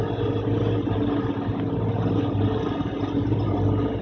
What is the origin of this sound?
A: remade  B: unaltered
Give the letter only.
B